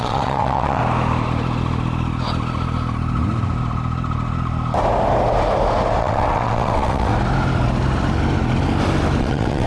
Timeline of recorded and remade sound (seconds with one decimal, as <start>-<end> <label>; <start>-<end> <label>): 0.0-0.8 remade; 0.8-6.0 recorded; 6.0-7.1 remade; 7.1-9.2 recorded; 9.2-9.7 remade